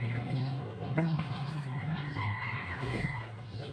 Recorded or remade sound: remade